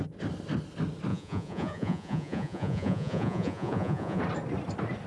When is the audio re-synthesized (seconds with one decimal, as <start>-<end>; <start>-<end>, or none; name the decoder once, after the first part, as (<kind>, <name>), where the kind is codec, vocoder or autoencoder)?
1.1-4.2 (vocoder, Vocos)